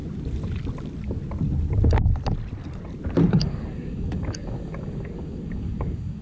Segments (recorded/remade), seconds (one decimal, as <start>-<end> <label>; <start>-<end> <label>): 0.0-3.3 recorded; 3.3-6.2 remade